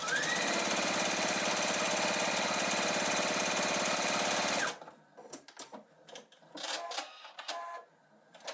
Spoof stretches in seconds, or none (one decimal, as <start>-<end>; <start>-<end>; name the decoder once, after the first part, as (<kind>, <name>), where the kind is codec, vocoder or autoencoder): none

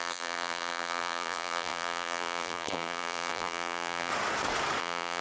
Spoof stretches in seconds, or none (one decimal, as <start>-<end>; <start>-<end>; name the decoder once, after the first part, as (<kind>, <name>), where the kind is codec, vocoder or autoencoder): 0.0-4.1 (vocoder, BigVGAN v2); 4.8-5.2

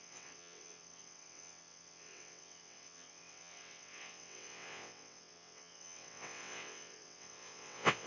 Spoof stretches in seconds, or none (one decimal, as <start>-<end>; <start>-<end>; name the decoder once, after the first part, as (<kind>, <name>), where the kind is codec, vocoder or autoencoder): 0.0-8.1 (vocoder, WaveNeXt)

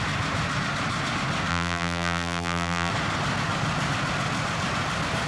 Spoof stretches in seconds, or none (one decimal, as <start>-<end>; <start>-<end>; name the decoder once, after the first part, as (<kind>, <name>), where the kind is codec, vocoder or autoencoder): 1.5-2.9 (vocoder, BigVGAN v2)

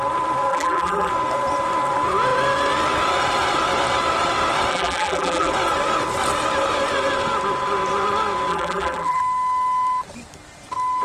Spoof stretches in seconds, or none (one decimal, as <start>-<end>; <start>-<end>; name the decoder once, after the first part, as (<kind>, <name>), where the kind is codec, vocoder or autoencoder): 0.5-1.1 (vocoder, BigVGAN v2); 4.7-5.5; 8.5-9.2

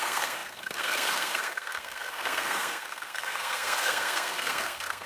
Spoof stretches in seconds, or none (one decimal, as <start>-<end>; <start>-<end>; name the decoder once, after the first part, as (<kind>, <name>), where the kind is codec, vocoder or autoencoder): 0.0-5.1 (codec, SNAC)

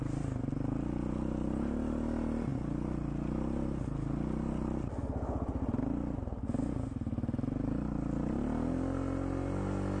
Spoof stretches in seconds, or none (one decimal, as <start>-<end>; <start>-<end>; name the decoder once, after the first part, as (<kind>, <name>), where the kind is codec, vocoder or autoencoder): none